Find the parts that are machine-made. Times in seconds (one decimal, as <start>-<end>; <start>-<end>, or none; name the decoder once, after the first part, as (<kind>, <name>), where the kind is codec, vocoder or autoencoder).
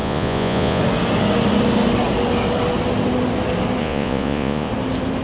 0.0-0.8 (vocoder, Vocos); 3.8-4.7